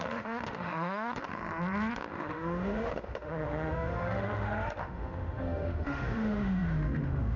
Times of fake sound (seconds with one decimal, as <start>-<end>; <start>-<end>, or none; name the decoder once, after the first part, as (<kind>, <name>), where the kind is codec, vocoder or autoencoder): 0.0-1.4 (autoencoder, DAC-VAE); 1.9-7.4